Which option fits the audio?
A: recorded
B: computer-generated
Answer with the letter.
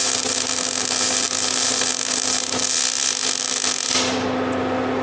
A